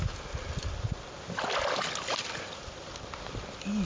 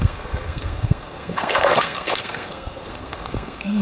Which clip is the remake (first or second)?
second